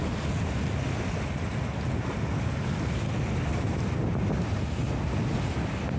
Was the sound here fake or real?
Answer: real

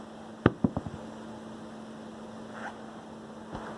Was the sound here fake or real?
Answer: real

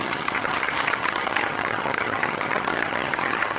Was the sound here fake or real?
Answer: fake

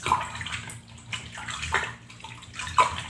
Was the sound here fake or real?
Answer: real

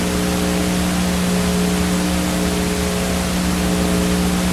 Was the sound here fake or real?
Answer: real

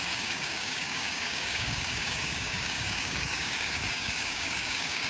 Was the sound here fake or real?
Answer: fake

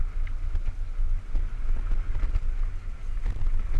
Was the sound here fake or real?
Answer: real